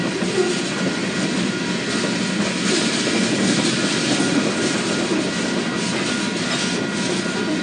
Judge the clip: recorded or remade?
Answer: recorded